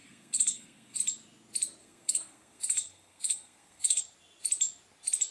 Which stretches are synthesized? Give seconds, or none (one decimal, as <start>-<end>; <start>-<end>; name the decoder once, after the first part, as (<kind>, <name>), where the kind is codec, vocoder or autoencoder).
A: 0.0-1.0 (codec, SNAC); 1.8-4.0